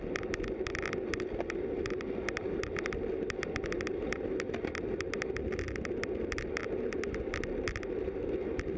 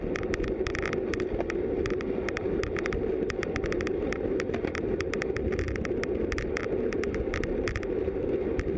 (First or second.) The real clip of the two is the first